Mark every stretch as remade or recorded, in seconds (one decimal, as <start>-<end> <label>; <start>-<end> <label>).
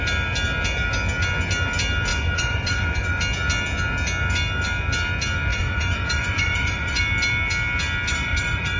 0.0-2.1 recorded; 2.1-3.2 remade; 3.2-5.5 recorded; 5.5-7.0 remade; 7.0-8.1 recorded; 8.1-8.8 remade